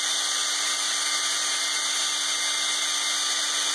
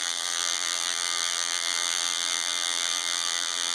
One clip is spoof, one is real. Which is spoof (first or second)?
second